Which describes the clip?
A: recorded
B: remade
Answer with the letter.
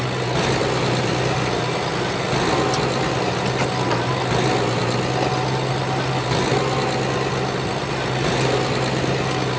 A